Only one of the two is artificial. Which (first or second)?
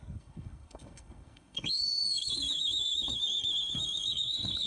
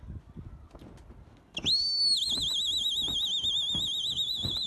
first